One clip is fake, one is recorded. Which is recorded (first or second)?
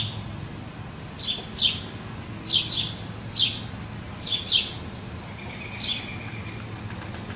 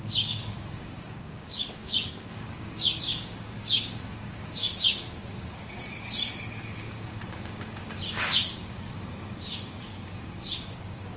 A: first